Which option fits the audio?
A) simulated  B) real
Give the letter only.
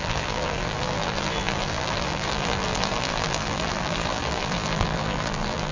A